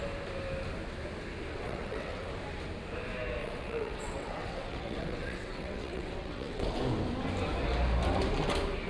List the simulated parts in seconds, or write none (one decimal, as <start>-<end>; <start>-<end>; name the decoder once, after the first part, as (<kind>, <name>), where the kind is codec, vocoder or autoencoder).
1.5-2.3 (vocoder, WaveNeXt); 3.4-6.7